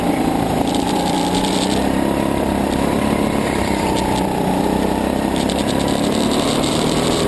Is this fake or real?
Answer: fake